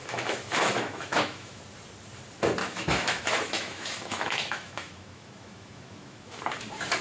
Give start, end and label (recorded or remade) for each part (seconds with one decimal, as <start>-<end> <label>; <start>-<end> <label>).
0.0-1.6 remade; 1.6-2.6 recorded; 2.6-6.4 remade; 6.4-7.0 recorded